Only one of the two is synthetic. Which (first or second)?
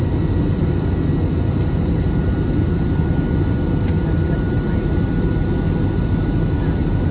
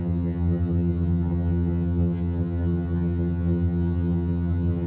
second